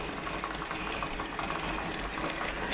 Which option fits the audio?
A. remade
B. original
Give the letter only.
B